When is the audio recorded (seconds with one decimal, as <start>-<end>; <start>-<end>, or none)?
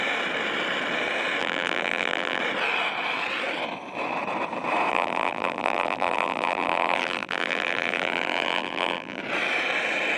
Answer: 0.0-1.4; 2.4-4.9; 9.2-10.2